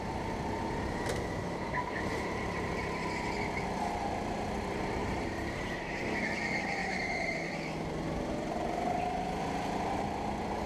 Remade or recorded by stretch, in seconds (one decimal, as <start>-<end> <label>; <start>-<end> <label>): 0.0-5.0 recorded; 5.0-6.0 remade; 6.0-6.8 recorded; 6.8-7.5 remade; 7.5-10.7 recorded